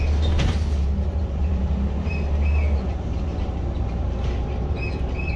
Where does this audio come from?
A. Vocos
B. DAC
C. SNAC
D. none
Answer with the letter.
D